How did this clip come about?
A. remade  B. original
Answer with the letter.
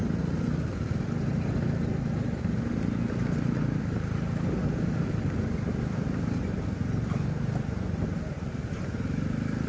B